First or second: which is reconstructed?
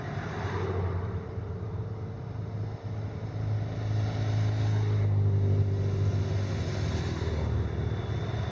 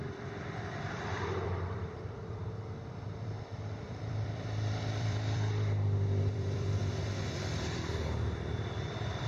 second